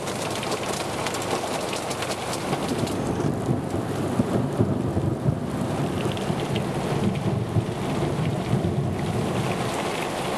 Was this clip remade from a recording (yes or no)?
no